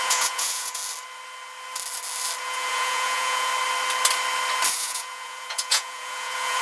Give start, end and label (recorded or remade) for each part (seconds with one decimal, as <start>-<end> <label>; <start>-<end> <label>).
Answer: 0.0-0.8 remade; 0.8-2.4 recorded; 2.4-3.5 remade; 3.5-4.7 recorded; 4.7-6.6 remade